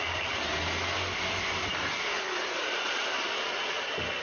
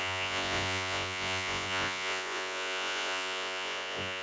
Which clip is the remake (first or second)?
second